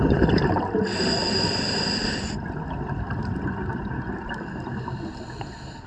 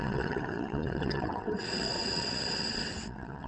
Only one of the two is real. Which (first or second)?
first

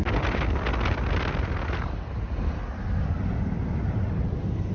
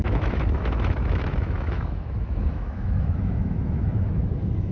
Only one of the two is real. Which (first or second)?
first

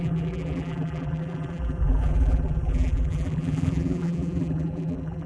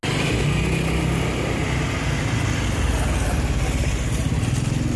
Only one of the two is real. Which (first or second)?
second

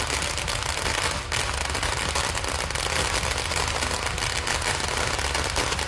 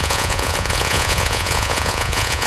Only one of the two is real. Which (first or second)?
first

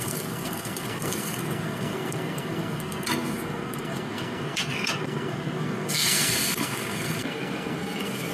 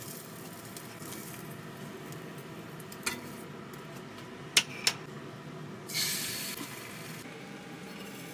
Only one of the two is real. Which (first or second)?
second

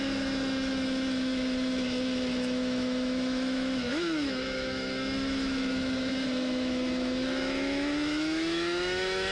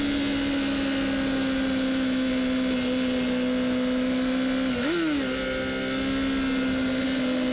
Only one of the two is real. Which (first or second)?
second